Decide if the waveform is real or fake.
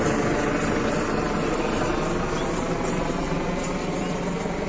real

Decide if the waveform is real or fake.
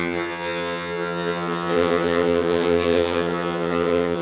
fake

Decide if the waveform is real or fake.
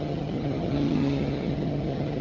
fake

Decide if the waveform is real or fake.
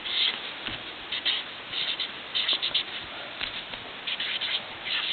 real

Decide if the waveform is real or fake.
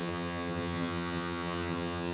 fake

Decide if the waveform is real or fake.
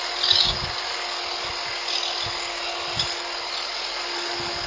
real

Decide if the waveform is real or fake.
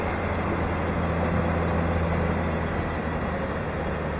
real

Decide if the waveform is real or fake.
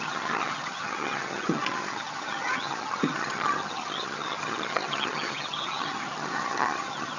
fake